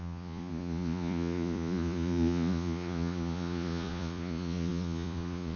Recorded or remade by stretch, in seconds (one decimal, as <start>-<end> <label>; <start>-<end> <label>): 0.0-5.6 remade